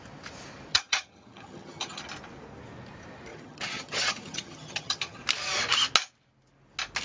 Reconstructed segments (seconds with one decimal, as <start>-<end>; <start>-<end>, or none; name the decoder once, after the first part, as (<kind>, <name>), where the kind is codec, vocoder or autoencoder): 0.7-2.0 (vocoder, HiFi-GAN); 3.3-5.2